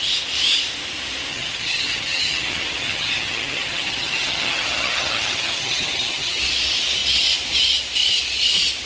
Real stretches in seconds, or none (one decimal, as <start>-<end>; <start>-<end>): 0.0-1.3; 6.4-8.9